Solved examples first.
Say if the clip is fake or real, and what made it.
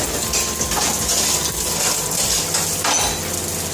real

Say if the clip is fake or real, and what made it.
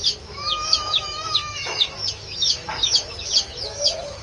fake, autoencoder, DAC-VAE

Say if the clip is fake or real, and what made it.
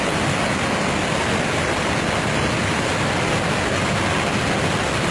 real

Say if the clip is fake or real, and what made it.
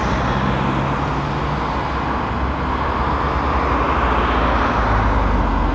real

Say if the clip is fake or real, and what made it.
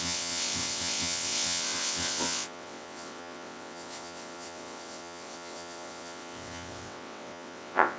fake, vocoder, WaveNeXt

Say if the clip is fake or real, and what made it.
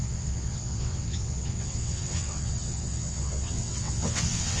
fake, vocoder, WaveNeXt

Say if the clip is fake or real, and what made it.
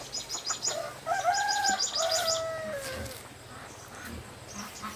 real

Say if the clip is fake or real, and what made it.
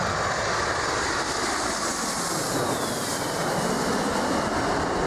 real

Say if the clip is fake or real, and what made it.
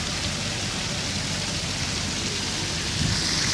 real